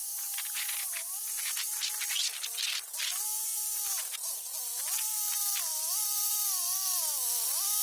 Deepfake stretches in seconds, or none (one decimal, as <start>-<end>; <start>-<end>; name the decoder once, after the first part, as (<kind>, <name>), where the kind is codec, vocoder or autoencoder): 0.0-1.6 (vocoder, Vocos); 3.9-4.8